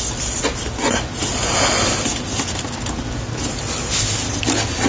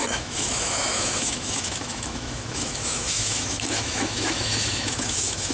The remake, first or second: second